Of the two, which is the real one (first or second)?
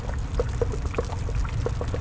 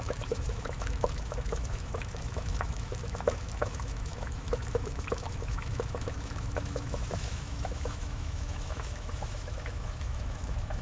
first